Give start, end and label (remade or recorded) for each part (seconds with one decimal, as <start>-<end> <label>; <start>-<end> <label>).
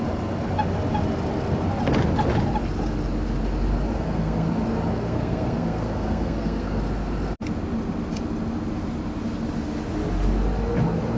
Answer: 0.0-3.9 recorded; 3.9-4.5 remade; 4.5-4.9 recorded; 4.9-6.8 remade; 6.8-11.2 recorded